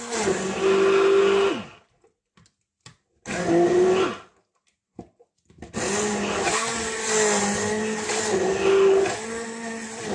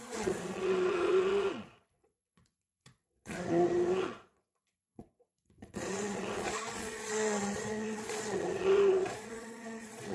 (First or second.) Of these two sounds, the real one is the first